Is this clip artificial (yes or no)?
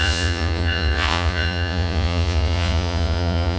yes